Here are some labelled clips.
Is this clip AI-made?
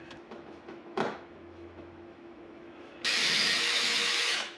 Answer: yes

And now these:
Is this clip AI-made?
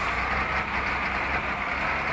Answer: no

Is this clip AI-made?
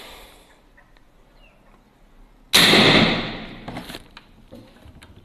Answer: no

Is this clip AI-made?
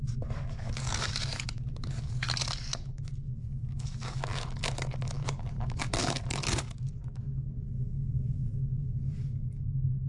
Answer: yes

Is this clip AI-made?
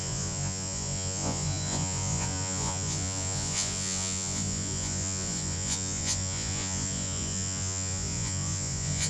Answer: yes